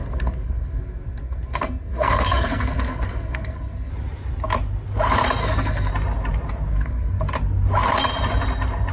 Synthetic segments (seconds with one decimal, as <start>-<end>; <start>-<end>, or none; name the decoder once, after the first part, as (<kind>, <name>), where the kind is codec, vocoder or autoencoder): 0.0-3.9 (codec, SNAC); 5.4-5.9; 6.7-7.2

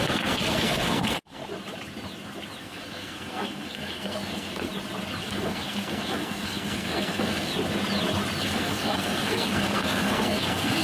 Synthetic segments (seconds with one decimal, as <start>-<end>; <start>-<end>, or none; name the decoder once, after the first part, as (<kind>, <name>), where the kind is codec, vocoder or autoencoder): 0.0-1.4 (codec, SNAC); 2.6-4.7; 5.2-7.5; 8.4-10.8

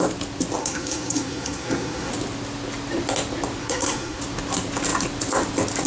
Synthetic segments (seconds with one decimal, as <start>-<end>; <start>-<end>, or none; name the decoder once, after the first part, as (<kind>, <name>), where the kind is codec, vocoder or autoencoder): 0.6-2.1 (codec, SNAC); 3.6-4.2